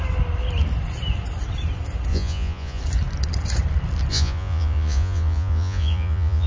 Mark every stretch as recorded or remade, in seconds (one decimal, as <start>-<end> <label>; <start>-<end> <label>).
0.0-2.1 recorded; 2.1-2.8 remade; 2.8-4.1 recorded; 4.1-6.5 remade